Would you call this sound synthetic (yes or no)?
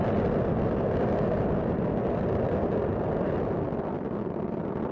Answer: no